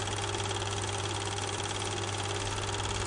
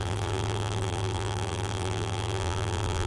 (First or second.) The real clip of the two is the first